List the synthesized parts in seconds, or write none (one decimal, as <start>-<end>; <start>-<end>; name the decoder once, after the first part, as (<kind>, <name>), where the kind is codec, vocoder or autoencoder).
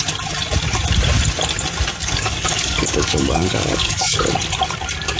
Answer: 1.9-4.3 (codec, DAC)